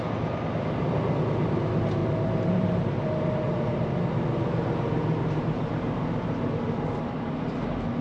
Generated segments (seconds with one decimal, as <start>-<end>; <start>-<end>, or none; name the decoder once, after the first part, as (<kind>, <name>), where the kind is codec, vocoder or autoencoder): 2.0-6.5 (vocoder, BigVGAN v2)